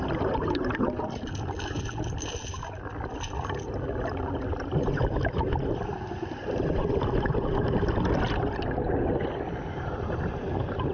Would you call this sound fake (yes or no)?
no